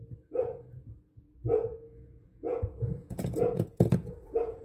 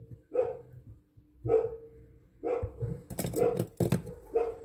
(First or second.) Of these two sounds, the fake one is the first